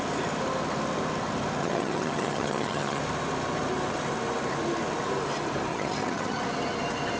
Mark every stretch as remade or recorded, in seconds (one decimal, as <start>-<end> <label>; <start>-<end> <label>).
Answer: 0.0-1.6 recorded; 1.6-3.0 remade; 3.0-5.7 recorded; 5.7-6.4 remade; 6.4-7.2 recorded